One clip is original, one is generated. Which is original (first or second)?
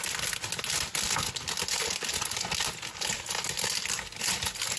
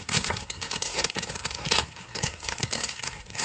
first